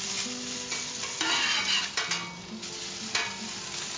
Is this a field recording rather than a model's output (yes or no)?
yes